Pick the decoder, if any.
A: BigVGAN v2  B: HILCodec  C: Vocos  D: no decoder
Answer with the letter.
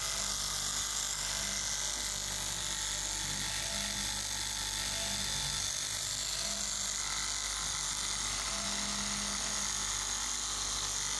D